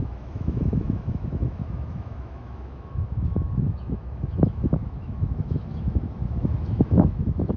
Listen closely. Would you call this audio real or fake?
fake